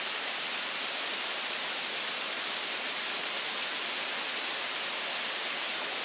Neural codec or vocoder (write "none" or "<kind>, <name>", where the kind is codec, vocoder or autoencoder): none